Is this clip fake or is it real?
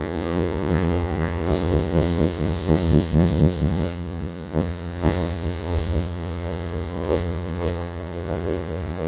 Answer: fake